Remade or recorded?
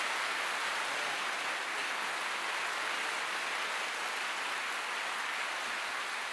recorded